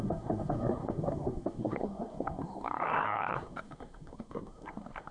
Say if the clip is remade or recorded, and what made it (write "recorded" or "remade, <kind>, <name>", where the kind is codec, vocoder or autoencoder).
remade, codec, SNAC